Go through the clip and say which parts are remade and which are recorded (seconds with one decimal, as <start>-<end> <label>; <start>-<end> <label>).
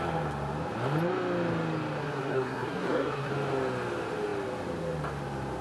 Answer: 0.0-2.0 recorded; 2.0-3.3 remade; 3.3-5.6 recorded